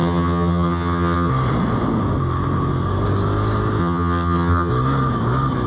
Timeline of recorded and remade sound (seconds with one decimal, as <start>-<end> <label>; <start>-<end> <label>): 0.0-1.3 remade; 1.3-3.8 recorded; 3.8-4.7 remade; 4.7-5.7 recorded